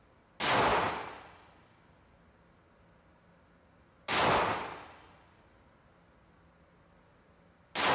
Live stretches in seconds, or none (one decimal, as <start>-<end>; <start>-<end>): 0.0-7.9